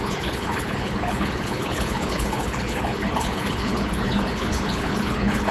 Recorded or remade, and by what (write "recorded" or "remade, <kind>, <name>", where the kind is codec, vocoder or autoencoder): remade, codec, HILCodec